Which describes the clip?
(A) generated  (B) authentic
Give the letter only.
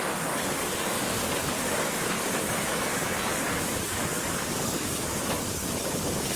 A